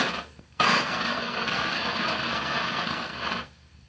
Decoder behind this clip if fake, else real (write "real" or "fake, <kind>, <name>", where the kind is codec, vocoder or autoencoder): fake, codec, SNAC